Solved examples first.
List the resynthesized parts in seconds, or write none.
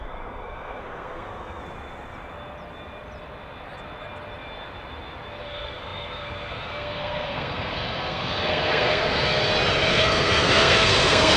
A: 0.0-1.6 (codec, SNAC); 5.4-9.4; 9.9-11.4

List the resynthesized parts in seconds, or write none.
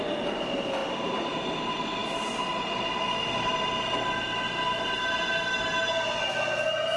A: none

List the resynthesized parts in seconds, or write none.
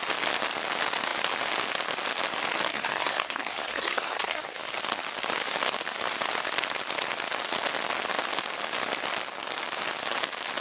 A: 2.7-4.7 (codec, SNAC)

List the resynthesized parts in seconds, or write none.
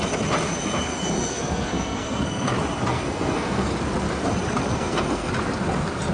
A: 1.3-2.5 (codec, SNAC); 2.9-3.7; 4.7-5.3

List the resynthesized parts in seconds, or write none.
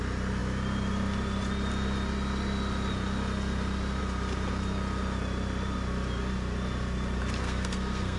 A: 7.4-8.2 (codec, SNAC)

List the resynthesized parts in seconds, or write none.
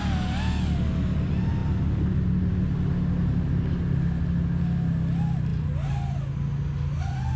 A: none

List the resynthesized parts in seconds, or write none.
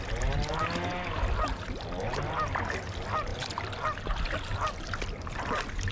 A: none